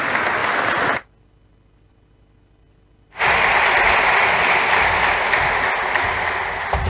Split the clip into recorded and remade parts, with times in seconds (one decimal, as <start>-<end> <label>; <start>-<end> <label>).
0.0-6.9 recorded